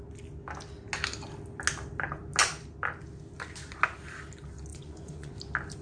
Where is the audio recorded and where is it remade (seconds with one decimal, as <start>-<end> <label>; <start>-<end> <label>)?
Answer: 0.0-4.7 recorded; 4.7-5.3 remade; 5.3-5.8 recorded